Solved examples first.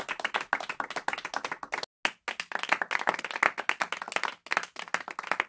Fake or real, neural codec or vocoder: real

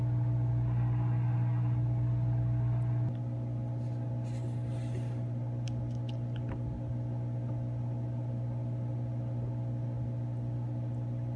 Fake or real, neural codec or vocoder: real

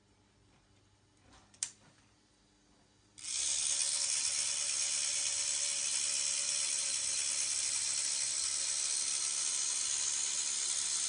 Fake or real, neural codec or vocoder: real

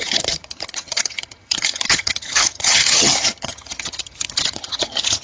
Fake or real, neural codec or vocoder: fake, vocoder, HiFi-GAN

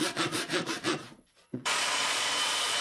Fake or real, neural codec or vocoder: fake, vocoder, Vocos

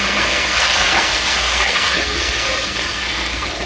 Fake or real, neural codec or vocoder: fake, codec, SNAC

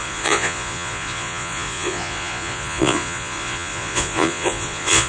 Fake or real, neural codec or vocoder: fake, vocoder, Vocos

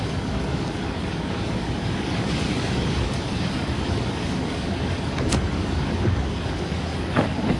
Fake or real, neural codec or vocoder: fake, codec, DAC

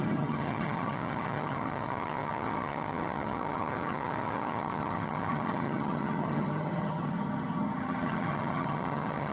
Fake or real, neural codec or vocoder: fake, vocoder, HiFi-GAN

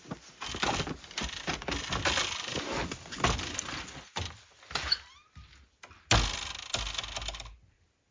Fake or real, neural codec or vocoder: real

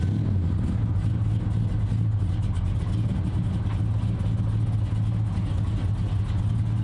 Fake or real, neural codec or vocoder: real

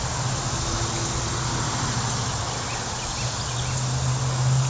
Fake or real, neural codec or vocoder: real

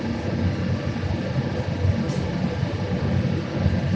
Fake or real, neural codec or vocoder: real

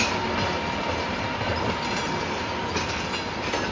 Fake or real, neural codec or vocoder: real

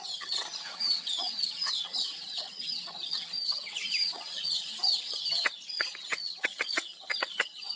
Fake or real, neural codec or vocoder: fake, vocoder, HiFi-GAN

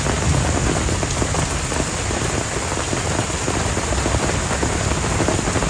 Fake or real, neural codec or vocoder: real